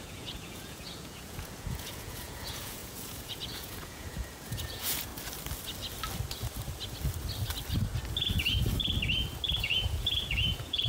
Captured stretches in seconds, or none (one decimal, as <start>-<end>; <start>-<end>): 5.1-9.6